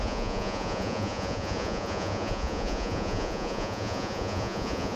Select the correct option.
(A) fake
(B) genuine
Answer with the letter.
A